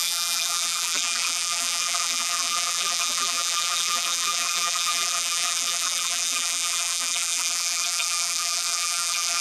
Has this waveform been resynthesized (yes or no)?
yes